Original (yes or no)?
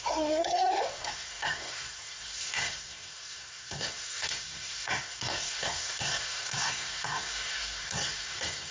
no